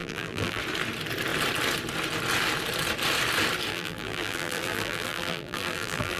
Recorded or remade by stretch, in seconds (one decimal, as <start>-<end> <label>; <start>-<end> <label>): 0.0-0.6 remade; 0.6-3.7 recorded; 3.7-6.2 remade